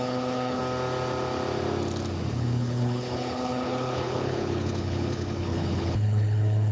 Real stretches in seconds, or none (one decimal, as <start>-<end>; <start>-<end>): 0.6-2.3